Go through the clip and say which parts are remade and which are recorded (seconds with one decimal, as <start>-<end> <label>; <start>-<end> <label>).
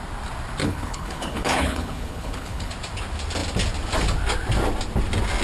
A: 0.0-0.6 recorded; 0.6-2.7 remade; 2.7-5.4 recorded